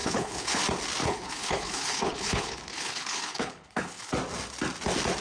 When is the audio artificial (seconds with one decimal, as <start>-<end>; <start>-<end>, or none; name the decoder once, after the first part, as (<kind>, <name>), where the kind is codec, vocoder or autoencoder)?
0.0-0.6 (codec, HILCodec); 1.0-4.1